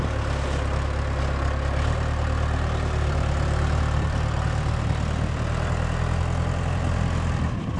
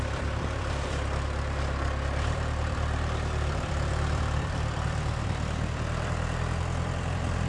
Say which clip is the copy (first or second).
second